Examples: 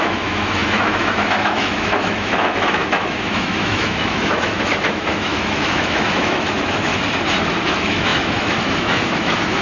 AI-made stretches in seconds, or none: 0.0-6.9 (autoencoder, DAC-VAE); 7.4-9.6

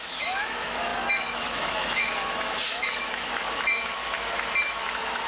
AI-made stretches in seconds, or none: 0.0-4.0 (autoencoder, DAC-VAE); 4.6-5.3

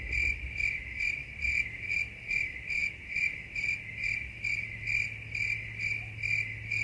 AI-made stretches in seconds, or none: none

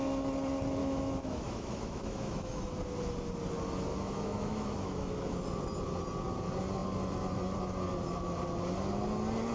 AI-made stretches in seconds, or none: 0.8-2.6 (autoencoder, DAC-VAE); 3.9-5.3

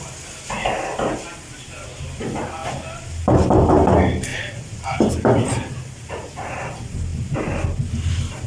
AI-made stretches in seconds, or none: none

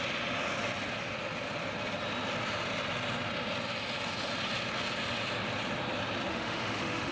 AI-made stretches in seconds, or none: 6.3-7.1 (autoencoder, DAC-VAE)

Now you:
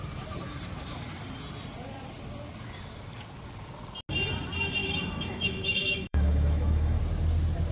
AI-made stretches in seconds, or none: 4.8-7.0 (autoencoder, DAC-VAE)